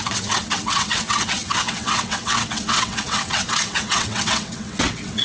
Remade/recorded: remade